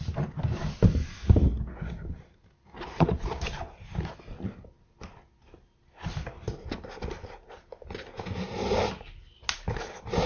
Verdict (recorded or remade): recorded